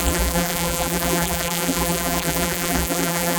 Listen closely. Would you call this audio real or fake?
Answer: fake